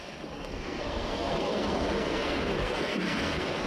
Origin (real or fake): fake